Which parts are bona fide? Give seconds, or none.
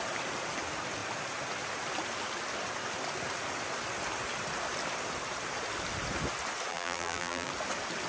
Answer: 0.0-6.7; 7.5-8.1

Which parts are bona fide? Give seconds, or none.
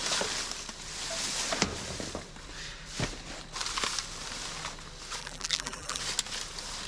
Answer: 0.0-5.2; 6.0-6.9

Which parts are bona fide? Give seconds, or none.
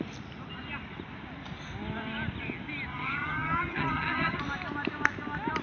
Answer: 0.0-2.9; 4.4-5.6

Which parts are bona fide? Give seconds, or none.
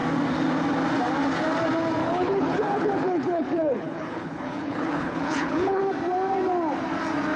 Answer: 0.0-2.0; 5.8-7.4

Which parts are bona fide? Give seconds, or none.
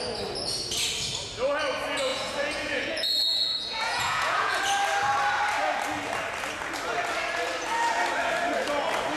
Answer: 0.0-2.1; 4.6-9.2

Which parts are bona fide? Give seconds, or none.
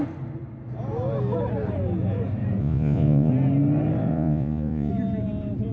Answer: 0.0-2.6; 3.3-4.1; 4.9-5.7